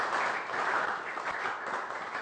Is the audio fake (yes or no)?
yes